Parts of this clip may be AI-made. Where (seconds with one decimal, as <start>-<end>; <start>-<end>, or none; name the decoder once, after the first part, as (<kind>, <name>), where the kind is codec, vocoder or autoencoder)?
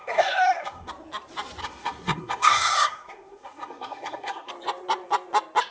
0.0-0.9 (codec, SNAC); 1.6-4.5